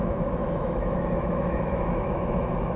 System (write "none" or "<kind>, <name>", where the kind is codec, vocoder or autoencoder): autoencoder, DAC-VAE